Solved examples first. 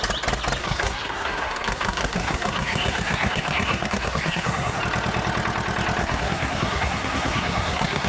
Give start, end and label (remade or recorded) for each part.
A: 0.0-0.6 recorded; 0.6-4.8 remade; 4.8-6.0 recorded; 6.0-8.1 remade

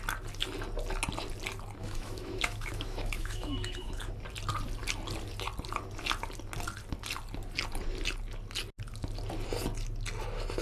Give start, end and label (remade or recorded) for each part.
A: 0.0-1.8 recorded; 1.8-4.1 remade; 4.1-10.6 recorded

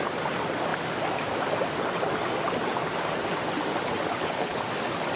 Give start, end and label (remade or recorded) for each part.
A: 0.0-4.1 recorded; 4.1-4.6 remade; 4.6-5.2 recorded

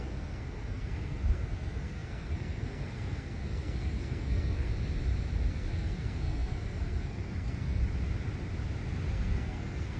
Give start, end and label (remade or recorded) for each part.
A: 0.0-4.7 remade; 4.7-5.5 recorded; 5.5-7.8 remade; 7.8-9.1 recorded; 9.1-10.0 remade

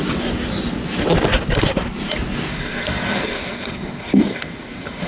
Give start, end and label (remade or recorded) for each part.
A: 0.0-2.5 recorded; 2.5-5.1 remade

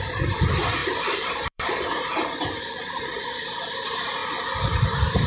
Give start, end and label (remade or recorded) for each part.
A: 0.0-0.8 recorded; 0.8-3.0 remade; 3.0-5.3 recorded

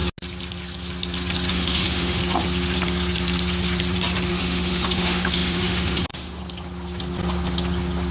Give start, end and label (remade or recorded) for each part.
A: 0.0-1.5 recorded; 1.5-2.2 remade; 2.2-4.3 recorded; 4.3-6.4 remade; 6.4-8.1 recorded